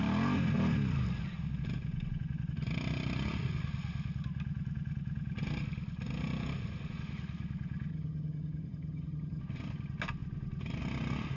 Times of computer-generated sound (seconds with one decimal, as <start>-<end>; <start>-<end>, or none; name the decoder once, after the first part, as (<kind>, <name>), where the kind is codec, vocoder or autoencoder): 7.9-9.4 (vocoder, HiFi-GAN)